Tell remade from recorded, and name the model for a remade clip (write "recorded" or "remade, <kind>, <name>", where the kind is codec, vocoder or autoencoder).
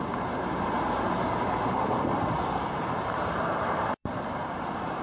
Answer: remade, vocoder, BigVGAN v2